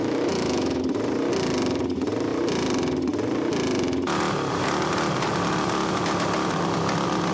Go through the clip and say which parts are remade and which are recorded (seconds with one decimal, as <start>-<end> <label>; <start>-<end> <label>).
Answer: 0.0-0.8 remade; 0.8-7.3 recorded